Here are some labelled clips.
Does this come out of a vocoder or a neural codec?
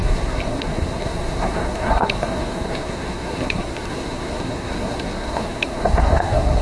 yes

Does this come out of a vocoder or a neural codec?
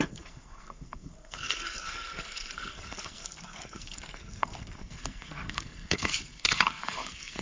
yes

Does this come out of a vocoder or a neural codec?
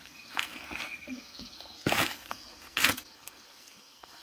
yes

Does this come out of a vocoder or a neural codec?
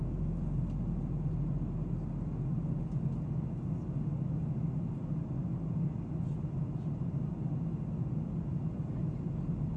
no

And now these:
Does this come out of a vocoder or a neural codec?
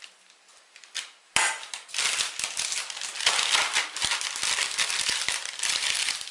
no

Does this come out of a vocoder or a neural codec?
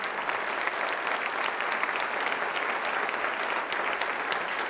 no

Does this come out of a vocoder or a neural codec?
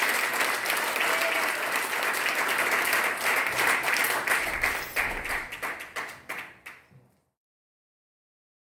no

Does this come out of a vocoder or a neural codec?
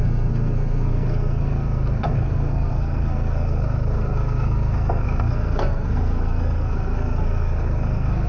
yes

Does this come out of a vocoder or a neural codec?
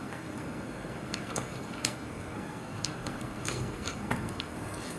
yes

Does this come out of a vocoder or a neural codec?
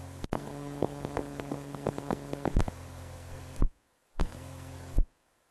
yes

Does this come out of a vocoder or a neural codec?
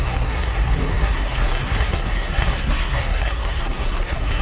yes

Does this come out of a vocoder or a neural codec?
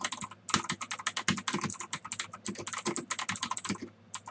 no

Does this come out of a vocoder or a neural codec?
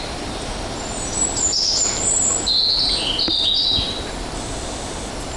no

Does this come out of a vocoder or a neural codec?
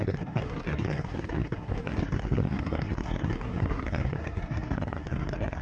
yes